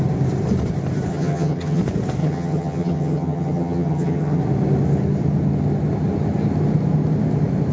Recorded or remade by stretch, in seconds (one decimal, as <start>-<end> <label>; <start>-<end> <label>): 0.0-1.1 recorded; 1.1-1.8 remade; 1.8-2.2 recorded; 2.2-4.4 remade; 4.4-7.7 recorded